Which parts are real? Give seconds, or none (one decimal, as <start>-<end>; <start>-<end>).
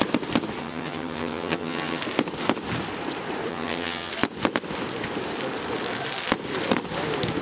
0.0-0.6; 2.0-3.5; 4.1-7.4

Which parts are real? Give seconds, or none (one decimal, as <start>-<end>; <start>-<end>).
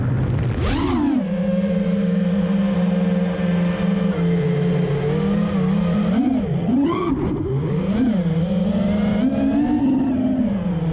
0.0-6.6; 7.1-9.8; 10.4-10.9